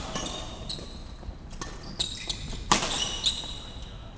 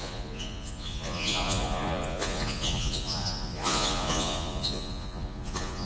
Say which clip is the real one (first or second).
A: first